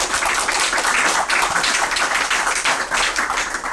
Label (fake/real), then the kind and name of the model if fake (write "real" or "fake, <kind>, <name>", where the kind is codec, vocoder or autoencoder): fake, vocoder, BigVGAN v2